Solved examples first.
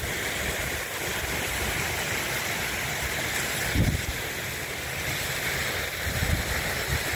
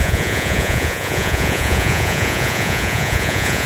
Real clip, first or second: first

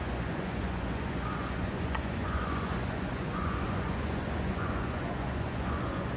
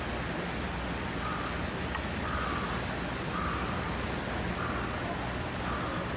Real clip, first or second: second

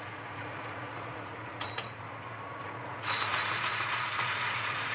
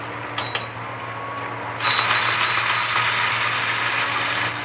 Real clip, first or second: second